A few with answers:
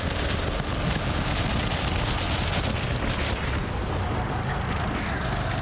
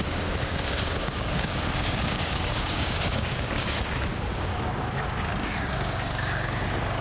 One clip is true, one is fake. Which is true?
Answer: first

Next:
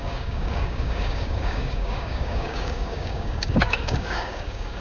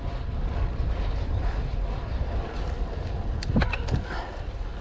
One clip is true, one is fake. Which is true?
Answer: second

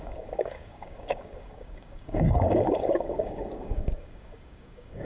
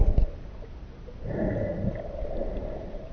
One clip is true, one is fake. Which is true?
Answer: second